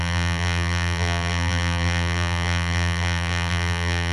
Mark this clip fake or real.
fake